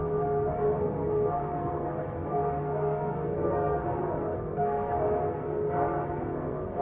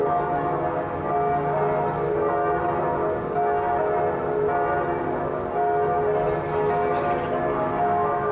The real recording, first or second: second